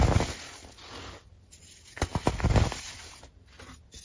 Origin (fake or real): real